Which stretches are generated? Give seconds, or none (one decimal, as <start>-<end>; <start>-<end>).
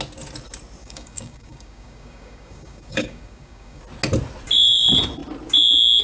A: 0.8-3.8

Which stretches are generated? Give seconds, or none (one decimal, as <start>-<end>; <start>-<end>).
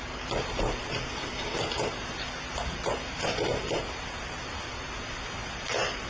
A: 1.1-1.7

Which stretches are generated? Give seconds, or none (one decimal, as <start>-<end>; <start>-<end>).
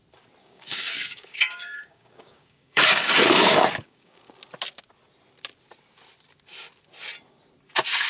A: 0.4-4.3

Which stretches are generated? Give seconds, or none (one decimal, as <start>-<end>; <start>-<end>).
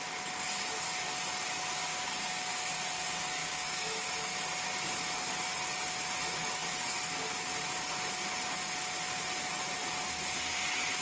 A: 1.9-2.7; 3.4-4.1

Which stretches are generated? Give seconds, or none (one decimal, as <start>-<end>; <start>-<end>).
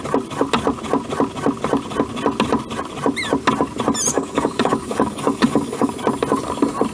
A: 4.1-5.9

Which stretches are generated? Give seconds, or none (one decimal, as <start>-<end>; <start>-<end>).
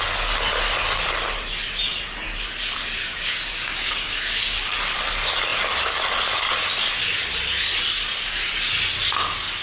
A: 3.0-4.8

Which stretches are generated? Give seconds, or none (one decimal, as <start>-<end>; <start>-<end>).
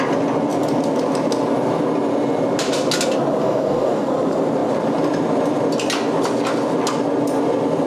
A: 3.4-4.1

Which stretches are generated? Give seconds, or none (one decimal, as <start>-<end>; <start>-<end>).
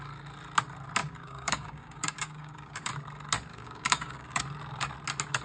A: 1.0-2.9; 3.5-4.4